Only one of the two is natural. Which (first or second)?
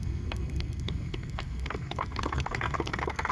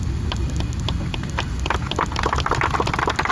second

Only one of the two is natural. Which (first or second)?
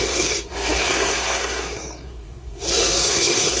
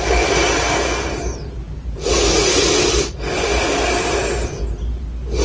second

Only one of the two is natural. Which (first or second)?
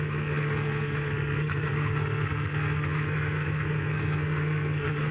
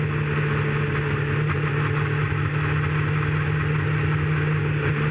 second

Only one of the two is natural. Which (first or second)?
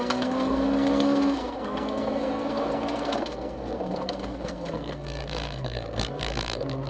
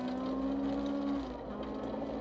second